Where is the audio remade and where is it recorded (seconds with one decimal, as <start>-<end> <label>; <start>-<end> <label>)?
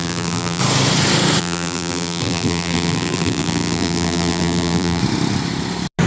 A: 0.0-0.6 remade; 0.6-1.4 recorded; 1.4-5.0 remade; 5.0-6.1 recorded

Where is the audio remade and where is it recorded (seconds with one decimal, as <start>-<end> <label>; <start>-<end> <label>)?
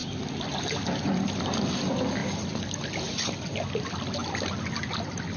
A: 0.0-1.3 remade; 1.3-2.2 recorded; 2.2-3.5 remade; 3.5-4.2 recorded; 4.2-5.4 remade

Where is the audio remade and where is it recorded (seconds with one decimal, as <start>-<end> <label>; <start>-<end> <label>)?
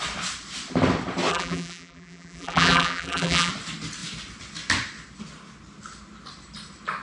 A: 0.0-1.3 recorded; 1.3-3.5 remade; 3.5-7.0 recorded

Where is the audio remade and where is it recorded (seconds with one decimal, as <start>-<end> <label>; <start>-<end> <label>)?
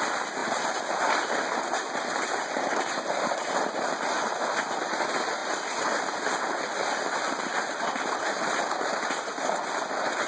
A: 0.0-10.3 recorded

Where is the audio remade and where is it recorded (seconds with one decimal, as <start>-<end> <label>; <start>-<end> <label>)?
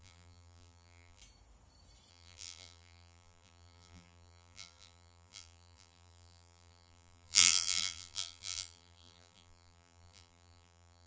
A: 0.0-1.2 remade; 1.2-2.1 recorded; 2.1-11.1 remade